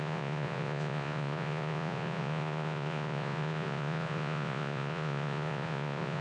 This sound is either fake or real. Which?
fake